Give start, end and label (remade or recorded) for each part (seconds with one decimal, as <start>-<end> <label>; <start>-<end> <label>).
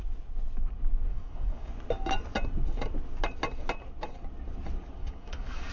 0.0-1.1 recorded; 1.1-1.7 remade; 1.7-5.0 recorded; 5.0-5.7 remade